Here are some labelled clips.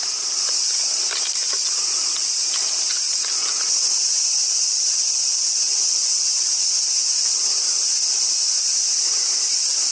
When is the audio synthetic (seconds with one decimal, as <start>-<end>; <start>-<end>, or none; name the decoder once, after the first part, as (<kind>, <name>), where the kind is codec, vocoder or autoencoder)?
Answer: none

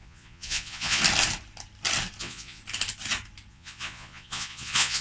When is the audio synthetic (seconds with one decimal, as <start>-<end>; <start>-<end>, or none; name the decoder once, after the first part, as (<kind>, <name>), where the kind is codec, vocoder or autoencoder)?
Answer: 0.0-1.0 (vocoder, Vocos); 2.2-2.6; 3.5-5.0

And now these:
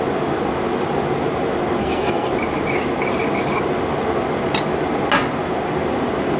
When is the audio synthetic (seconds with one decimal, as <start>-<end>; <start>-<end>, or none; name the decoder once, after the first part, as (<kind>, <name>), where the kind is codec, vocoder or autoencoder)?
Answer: 1.8-2.3 (codec, SNAC)

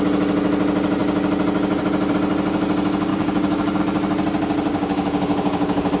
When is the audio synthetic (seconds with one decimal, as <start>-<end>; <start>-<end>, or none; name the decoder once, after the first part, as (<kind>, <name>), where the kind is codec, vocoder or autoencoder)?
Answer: 3.1-3.8 (codec, DAC); 4.7-6.0

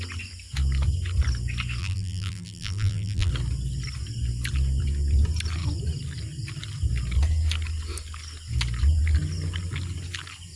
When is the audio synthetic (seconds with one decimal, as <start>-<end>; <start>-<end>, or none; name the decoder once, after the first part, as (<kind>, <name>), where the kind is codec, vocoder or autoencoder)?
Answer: 1.8-3.3 (vocoder, BigVGAN v2)

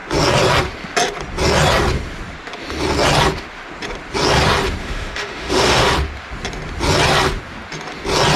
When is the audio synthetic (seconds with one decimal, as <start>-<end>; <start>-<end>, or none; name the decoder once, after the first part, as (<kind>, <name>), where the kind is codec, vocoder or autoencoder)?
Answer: 4.8-5.9 (autoencoder, DAC-VAE)

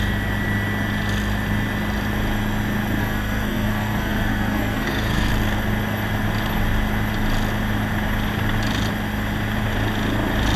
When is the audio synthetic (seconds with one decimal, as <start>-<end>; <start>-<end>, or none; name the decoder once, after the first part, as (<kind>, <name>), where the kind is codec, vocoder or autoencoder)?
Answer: 3.0-5.3 (codec, SNAC)

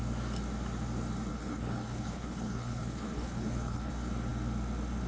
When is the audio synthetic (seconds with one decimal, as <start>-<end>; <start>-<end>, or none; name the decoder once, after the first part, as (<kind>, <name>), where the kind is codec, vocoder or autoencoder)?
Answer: 1.3-3.9 (codec, HILCodec)